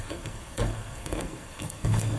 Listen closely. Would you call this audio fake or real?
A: fake